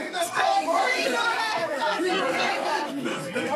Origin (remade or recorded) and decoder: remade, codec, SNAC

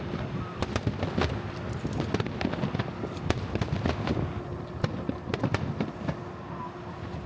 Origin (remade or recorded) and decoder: recorded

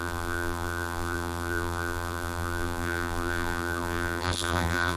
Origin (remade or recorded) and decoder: remade, vocoder, BigVGAN v2